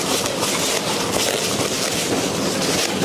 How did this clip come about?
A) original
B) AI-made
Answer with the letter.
A